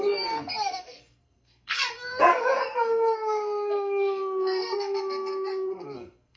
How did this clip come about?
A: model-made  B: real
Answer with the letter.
A